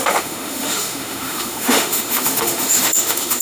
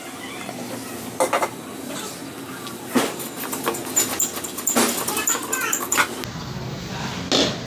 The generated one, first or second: first